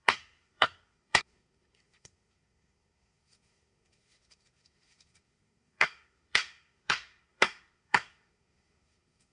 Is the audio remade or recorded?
remade